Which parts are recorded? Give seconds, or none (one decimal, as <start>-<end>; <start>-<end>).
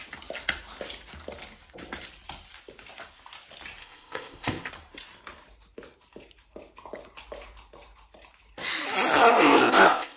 0.0-3.8; 4.7-9.3